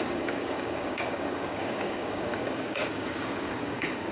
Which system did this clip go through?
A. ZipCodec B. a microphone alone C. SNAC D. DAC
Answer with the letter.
D